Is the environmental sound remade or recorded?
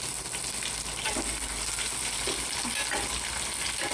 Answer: recorded